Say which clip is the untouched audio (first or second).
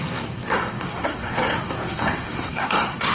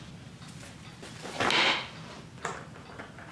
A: second